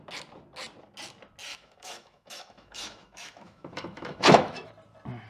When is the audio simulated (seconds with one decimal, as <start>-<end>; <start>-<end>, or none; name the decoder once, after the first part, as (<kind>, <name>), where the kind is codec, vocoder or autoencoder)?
1.5-4.7 (autoencoder, DAC-VAE)